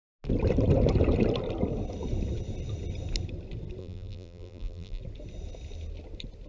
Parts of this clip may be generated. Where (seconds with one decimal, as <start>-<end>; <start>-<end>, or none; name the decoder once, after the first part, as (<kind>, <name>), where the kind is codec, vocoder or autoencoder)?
3.8-5.0 (vocoder, BigVGAN v2)